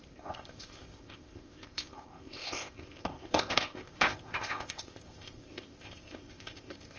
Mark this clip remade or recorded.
remade